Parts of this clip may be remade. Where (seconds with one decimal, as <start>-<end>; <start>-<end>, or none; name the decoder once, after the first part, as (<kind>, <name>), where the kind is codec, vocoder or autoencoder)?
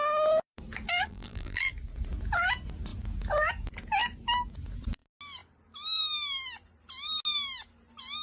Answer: 1.1-1.7 (vocoder, BigVGAN v2)